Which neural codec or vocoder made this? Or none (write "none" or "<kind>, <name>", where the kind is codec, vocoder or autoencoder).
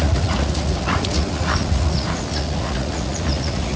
vocoder, Vocos